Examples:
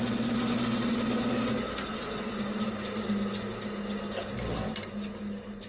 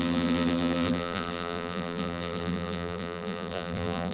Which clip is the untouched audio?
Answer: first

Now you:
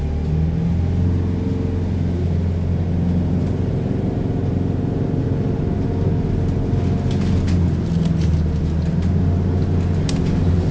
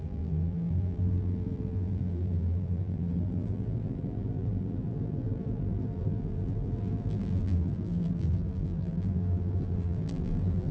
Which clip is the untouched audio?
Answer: first